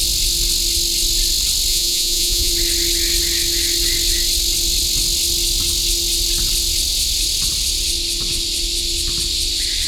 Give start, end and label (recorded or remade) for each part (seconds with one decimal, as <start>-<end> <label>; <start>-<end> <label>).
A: 0.0-1.7 recorded; 1.7-2.5 remade; 2.5-9.9 recorded